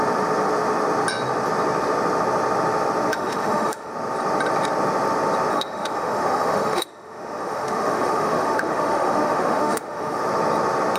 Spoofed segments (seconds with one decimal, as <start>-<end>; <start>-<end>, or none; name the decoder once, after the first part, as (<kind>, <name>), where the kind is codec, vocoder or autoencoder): 3.1-3.9 (autoencoder, DAC-VAE); 5.5-10.2